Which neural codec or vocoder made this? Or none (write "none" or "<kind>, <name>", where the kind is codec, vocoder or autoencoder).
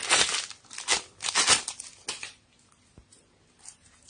none